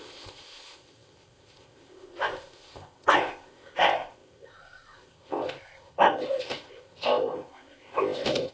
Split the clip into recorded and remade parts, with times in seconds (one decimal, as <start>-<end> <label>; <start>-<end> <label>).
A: 0.0-8.5 remade